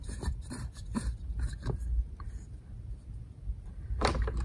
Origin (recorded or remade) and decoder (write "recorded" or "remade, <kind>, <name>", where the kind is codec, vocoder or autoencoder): remade, vocoder, BigVGAN v2